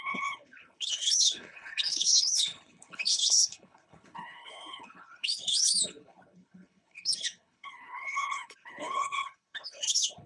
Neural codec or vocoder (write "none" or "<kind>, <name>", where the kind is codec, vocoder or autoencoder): codec, HILCodec